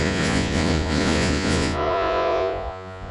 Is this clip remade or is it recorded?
remade